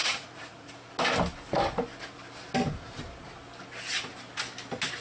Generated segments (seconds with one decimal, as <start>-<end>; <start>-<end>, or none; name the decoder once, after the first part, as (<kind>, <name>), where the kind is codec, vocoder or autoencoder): 0.0-0.7 (vocoder, Vocos)

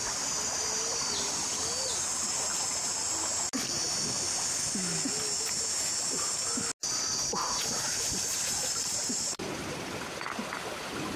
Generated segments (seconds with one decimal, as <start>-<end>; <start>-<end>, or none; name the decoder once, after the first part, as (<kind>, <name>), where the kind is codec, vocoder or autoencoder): none

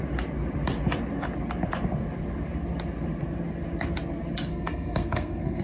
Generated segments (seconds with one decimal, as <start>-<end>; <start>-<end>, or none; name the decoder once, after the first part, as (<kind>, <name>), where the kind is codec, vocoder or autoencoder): 4.5-5.6 (codec, SNAC)

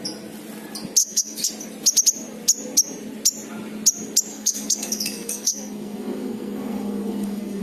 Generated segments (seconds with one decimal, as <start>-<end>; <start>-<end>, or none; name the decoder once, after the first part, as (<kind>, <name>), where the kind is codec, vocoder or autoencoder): 1.0-1.5 (codec, SNAC); 4.3-7.6

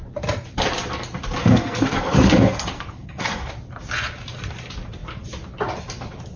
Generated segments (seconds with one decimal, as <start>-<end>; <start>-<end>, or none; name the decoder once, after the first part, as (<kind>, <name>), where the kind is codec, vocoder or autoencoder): 1.4-3.5 (codec, SNAC)